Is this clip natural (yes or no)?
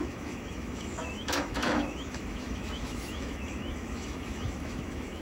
no